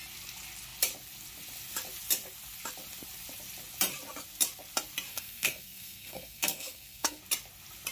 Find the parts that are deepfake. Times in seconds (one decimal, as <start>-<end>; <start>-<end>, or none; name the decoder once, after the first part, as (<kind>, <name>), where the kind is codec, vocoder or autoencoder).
5.1-7.2 (codec, SNAC)